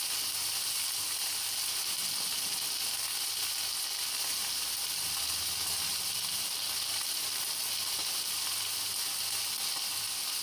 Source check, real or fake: real